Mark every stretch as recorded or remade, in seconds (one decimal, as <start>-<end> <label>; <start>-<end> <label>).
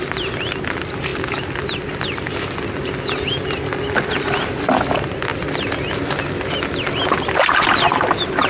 0.0-8.5 recorded